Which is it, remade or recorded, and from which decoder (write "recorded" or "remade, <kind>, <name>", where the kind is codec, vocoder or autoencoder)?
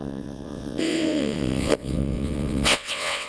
remade, vocoder, WaveNeXt